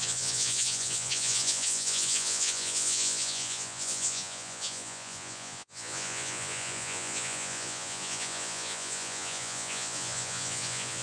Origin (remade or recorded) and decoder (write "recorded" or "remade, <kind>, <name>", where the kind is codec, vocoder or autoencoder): remade, vocoder, Vocos